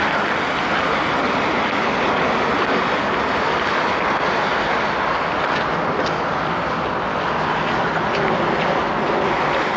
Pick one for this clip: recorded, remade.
recorded